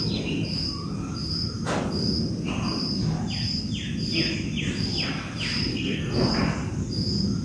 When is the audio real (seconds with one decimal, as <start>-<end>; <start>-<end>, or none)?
0.0-5.7; 6.3-7.4